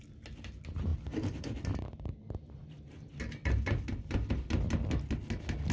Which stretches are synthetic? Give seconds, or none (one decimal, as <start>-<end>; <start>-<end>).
0.9-4.3